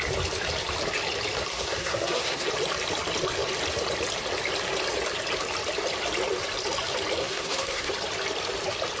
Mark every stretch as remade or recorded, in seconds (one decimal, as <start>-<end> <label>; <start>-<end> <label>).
0.0-1.5 recorded; 1.5-2.5 remade; 2.5-7.2 recorded; 7.2-7.9 remade; 7.9-9.0 recorded

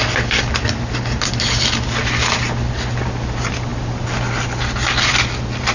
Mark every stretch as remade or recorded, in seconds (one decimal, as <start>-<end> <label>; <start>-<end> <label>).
0.0-5.7 recorded

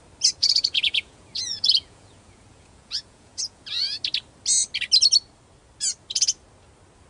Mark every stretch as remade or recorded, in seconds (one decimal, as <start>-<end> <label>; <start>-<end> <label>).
0.0-0.4 recorded; 0.4-4.0 remade; 4.0-7.1 recorded

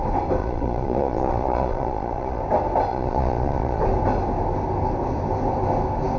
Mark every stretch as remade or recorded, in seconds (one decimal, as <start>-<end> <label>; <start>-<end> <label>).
0.0-0.4 recorded; 0.4-2.4 remade; 2.4-2.9 recorded; 2.9-3.8 remade; 3.8-6.2 recorded

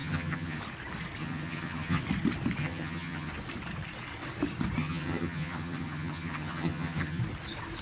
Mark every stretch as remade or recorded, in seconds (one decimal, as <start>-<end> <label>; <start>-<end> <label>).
0.0-0.6 remade; 0.6-1.2 recorded; 1.2-2.0 remade; 2.0-2.6 recorded; 2.6-3.3 remade; 3.3-4.8 recorded; 4.8-7.2 remade; 7.2-7.8 recorded

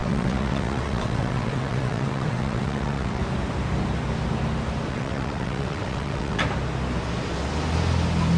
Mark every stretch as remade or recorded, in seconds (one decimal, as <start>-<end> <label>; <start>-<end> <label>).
0.0-3.2 remade; 3.2-4.9 recorded; 4.9-6.4 remade; 6.4-8.4 recorded

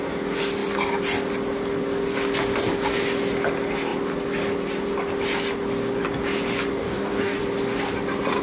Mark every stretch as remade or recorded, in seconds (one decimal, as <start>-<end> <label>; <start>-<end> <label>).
0.0-6.8 recorded; 6.8-7.4 remade; 7.4-8.4 recorded

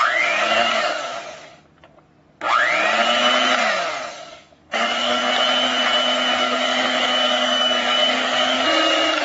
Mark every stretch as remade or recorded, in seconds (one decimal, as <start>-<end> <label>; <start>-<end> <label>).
0.0-1.1 remade; 1.1-4.1 recorded; 4.1-5.2 remade; 5.2-6.4 recorded; 6.4-9.2 remade